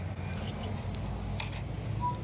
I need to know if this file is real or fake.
real